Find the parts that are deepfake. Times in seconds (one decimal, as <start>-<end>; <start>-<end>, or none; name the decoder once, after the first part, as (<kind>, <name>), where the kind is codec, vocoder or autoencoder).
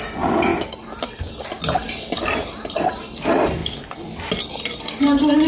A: none